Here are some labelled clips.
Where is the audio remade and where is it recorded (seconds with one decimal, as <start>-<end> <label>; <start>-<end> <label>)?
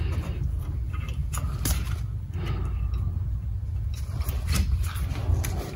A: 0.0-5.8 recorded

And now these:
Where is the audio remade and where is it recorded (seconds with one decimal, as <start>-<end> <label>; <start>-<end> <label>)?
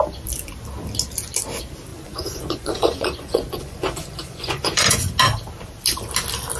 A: 0.0-1.9 recorded; 1.9-5.1 remade; 5.1-6.6 recorded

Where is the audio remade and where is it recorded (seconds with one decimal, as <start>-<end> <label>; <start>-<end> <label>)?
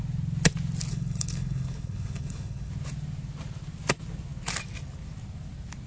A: 0.0-0.9 recorded; 0.9-2.7 remade; 2.7-5.9 recorded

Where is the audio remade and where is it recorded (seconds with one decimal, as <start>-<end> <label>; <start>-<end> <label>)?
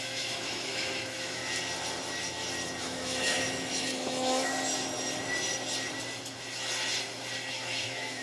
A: 0.0-1.4 remade; 1.4-2.8 recorded; 2.8-4.5 remade; 4.5-7.5 recorded; 7.5-8.2 remade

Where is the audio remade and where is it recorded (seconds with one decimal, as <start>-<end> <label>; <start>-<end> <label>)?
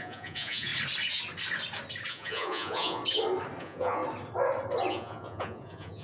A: 0.0-0.7 remade; 0.7-2.1 recorded; 2.1-3.0 remade; 3.0-3.6 recorded; 3.6-4.0 remade; 4.0-4.9 recorded; 4.9-6.0 remade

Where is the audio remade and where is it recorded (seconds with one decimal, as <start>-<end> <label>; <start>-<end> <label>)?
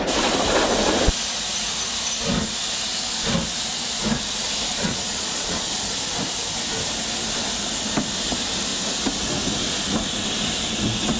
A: 0.0-4.7 recorded; 4.7-5.7 remade; 5.7-11.2 recorded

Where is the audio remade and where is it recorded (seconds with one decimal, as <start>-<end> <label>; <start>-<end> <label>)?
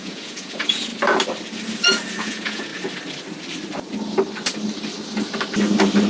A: 0.0-0.9 remade; 0.9-2.2 recorded; 2.2-2.7 remade; 2.7-6.1 recorded